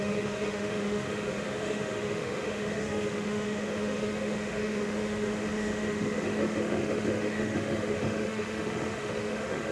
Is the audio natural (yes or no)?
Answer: no